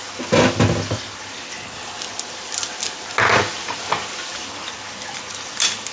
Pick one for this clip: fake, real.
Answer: real